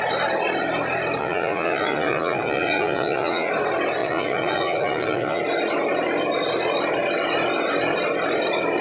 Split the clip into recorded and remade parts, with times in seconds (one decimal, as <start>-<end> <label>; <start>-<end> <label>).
0.0-1.2 recorded; 1.2-3.5 remade; 3.5-4.0 recorded; 4.0-5.4 remade; 5.4-8.8 recorded